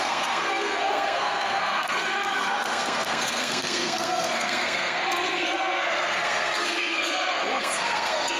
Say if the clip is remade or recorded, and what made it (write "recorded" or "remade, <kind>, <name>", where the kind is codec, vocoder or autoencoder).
remade, codec, SNAC